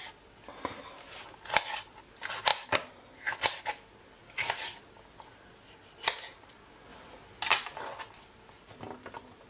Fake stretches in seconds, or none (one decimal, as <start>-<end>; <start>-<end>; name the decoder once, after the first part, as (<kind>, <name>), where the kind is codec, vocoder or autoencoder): none